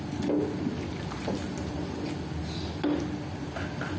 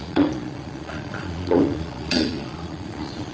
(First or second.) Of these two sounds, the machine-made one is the second